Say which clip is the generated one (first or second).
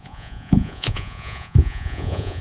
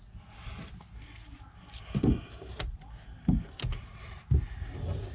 first